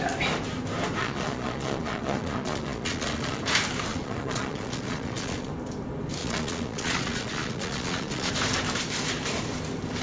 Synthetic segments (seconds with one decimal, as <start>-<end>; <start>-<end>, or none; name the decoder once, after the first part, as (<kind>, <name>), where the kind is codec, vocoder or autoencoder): 1.0-3.4 (vocoder, Vocos); 3.9-5.5; 6.2-8.3